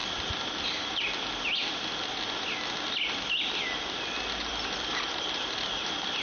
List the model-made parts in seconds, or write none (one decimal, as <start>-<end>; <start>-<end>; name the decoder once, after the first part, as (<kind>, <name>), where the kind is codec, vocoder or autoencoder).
none